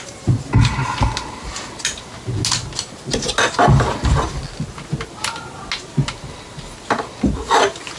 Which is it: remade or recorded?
recorded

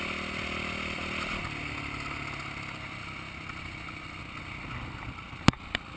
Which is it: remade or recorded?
recorded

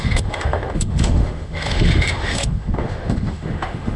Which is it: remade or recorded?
remade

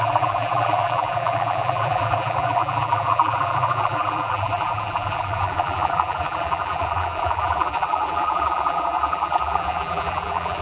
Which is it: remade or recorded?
remade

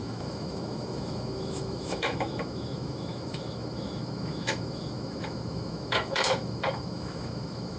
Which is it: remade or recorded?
remade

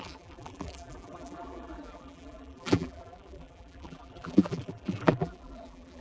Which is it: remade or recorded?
remade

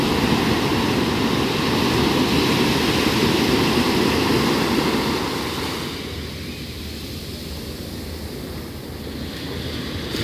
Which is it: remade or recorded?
recorded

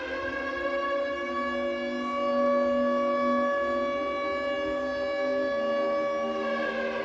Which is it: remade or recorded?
recorded